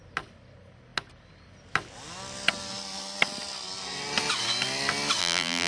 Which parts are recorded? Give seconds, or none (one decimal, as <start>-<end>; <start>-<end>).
0.0-5.2